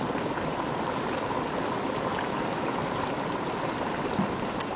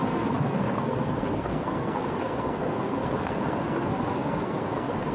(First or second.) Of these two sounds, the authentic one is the first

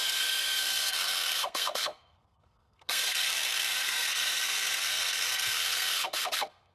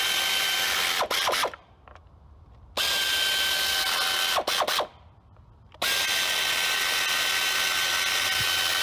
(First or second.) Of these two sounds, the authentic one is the second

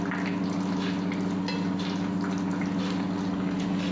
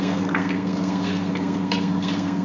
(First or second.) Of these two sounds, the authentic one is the first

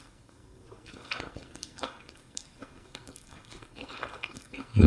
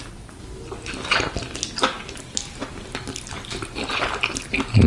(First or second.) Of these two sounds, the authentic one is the second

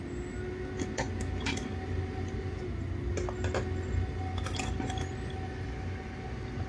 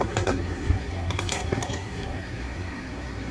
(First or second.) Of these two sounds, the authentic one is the first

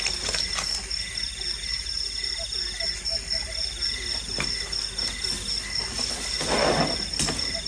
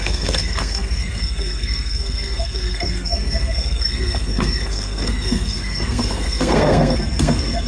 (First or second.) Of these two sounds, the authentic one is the first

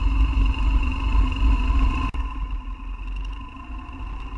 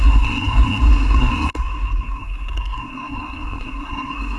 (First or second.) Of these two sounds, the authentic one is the first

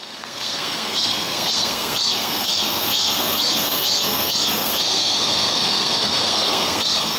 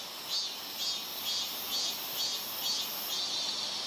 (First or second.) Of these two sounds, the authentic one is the second